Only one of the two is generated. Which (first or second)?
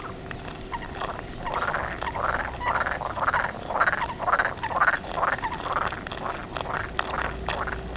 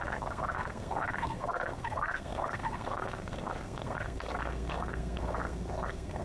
second